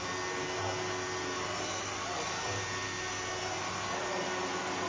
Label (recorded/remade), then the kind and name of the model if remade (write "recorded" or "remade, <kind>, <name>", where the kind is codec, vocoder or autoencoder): recorded